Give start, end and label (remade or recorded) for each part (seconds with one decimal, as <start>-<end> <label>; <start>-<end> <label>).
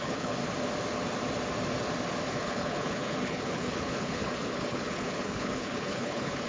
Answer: 0.0-0.4 remade; 0.4-2.3 recorded; 2.3-6.5 remade